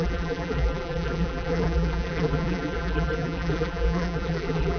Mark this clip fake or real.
fake